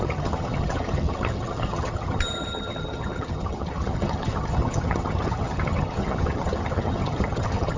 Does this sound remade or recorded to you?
remade